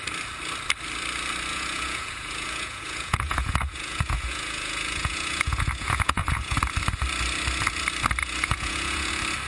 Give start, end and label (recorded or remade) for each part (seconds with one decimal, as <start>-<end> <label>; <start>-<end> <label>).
0.0-1.5 recorded; 1.5-6.6 remade; 6.6-8.2 recorded; 8.2-9.1 remade; 9.1-9.5 recorded